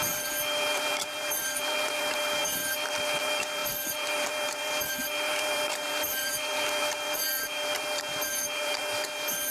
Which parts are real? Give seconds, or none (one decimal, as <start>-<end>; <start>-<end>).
none